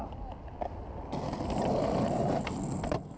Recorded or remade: recorded